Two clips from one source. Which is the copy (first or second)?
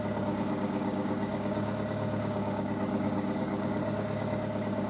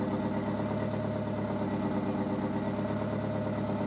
first